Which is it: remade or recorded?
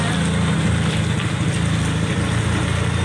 recorded